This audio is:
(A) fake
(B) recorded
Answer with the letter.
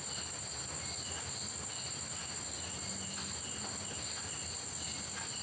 B